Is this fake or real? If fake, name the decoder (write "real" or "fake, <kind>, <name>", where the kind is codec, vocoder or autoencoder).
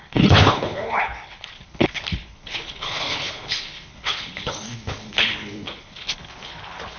fake, codec, HILCodec